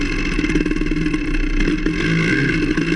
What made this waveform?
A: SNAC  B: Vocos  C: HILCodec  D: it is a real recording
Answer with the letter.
D